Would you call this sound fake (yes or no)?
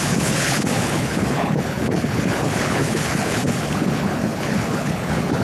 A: yes